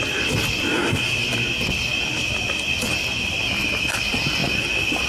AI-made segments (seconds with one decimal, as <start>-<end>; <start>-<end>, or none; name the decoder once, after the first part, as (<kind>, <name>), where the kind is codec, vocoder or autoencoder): none